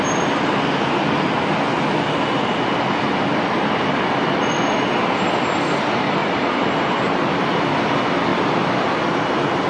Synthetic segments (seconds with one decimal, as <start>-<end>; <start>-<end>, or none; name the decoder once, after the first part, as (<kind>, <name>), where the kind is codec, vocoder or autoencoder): none